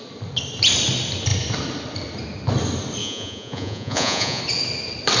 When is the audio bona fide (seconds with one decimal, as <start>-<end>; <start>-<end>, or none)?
0.0-3.0; 4.4-5.2